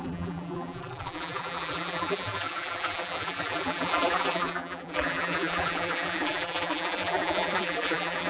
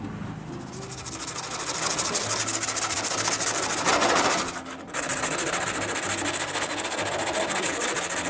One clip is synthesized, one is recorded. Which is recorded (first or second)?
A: second